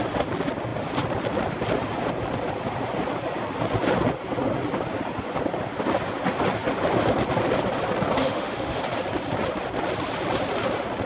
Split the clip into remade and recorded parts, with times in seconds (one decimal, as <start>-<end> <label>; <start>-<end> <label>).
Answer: 0.0-8.2 recorded; 8.2-8.8 remade; 8.8-11.1 recorded